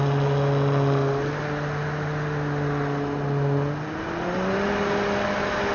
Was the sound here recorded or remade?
recorded